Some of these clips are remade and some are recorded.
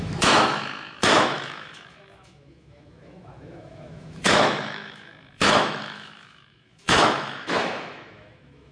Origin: remade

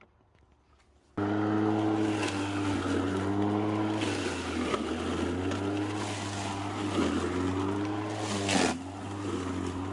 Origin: recorded